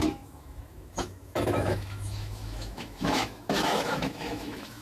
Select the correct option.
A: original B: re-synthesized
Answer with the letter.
B